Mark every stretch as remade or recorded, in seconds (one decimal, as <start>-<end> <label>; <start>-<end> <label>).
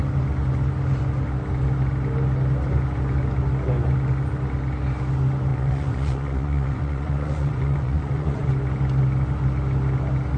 0.0-5.5 recorded; 5.5-8.5 remade; 8.5-10.4 recorded